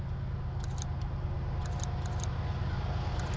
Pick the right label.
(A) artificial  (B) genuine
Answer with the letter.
B